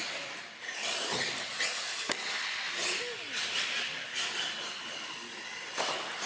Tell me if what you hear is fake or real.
real